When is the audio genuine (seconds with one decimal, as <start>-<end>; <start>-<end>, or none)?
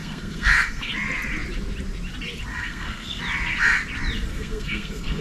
0.9-2.5; 3.2-4.3